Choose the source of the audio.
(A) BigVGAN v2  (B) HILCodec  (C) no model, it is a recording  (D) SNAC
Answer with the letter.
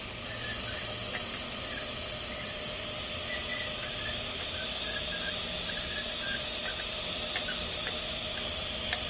C